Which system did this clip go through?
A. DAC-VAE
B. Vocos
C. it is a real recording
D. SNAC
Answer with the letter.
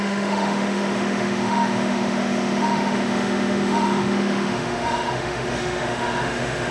A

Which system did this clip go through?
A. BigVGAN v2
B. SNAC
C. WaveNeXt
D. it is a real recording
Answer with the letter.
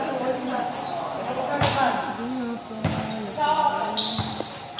D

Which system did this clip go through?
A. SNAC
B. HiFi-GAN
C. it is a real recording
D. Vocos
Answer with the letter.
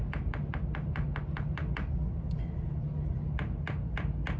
C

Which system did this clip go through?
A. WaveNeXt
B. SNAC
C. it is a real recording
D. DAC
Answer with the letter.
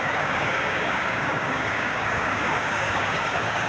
D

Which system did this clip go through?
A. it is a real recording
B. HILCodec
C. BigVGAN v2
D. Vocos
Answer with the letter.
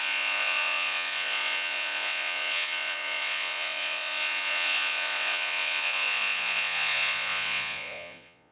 D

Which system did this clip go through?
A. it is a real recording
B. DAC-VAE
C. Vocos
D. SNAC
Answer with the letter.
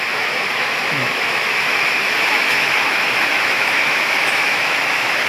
B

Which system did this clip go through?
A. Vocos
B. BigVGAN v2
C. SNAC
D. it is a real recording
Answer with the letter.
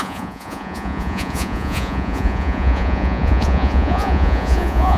A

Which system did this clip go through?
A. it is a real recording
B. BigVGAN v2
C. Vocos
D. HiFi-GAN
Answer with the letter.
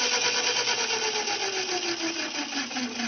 A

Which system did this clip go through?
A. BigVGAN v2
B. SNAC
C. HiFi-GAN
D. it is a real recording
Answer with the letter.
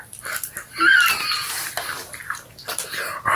D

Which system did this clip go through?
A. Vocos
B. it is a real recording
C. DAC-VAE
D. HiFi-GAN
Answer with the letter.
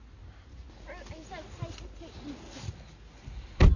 B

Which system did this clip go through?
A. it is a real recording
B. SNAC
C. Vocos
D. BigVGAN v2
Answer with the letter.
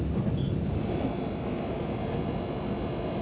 A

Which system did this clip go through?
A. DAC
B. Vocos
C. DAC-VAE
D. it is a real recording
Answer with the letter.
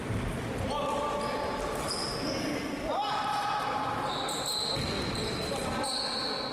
D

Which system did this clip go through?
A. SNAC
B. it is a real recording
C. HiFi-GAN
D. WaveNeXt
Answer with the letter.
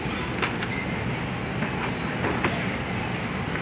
B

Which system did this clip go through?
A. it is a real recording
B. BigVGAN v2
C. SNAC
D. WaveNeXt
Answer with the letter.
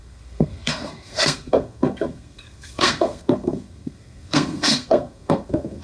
C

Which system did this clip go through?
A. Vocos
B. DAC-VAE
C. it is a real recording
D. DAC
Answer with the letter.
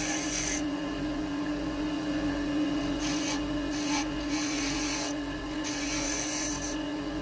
A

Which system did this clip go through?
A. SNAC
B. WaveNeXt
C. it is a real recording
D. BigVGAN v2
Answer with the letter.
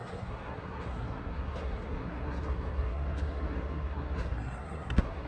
A